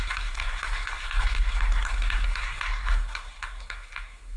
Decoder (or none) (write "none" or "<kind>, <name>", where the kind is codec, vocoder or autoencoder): codec, SNAC